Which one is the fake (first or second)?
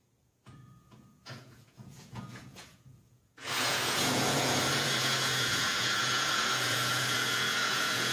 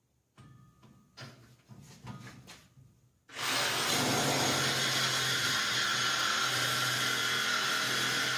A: first